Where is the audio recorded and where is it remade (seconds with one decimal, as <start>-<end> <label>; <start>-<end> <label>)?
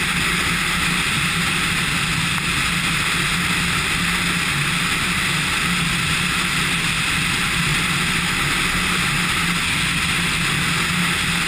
0.0-11.5 recorded